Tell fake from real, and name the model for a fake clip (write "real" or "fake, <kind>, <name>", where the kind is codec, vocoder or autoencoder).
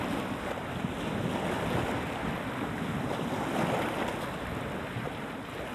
real